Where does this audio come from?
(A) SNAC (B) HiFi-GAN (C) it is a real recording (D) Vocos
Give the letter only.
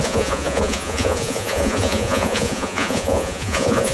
D